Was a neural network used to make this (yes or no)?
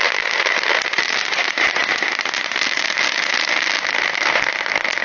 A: no